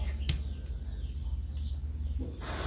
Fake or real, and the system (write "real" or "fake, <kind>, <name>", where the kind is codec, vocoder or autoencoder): real